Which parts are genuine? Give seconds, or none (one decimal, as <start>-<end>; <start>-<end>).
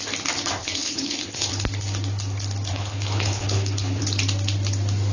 0.0-0.6; 1.5-2.7; 4.0-5.1